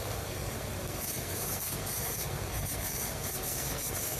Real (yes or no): no